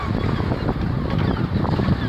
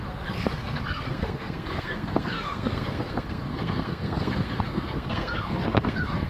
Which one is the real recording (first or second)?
first